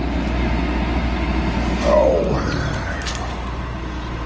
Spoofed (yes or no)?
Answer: no